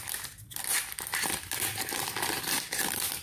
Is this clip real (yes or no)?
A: yes